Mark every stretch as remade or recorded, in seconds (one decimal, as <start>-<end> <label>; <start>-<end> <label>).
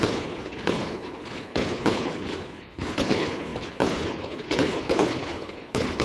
0.0-6.0 remade